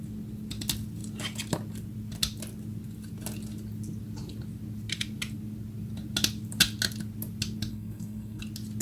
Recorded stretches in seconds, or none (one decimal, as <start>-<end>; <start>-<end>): 0.0-7.7; 8.4-8.8